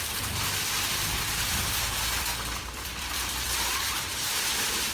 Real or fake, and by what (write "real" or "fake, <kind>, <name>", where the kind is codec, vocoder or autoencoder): fake, vocoder, BigVGAN v2